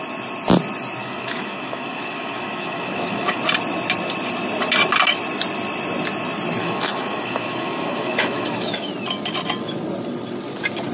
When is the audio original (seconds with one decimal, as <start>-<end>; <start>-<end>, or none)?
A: 0.0-1.0; 3.4-6.6; 8.9-10.9